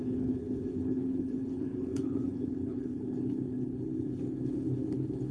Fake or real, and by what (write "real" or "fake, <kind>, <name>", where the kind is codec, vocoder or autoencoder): fake, codec, HILCodec